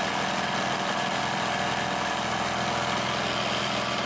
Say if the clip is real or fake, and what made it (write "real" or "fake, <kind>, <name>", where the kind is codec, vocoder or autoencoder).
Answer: real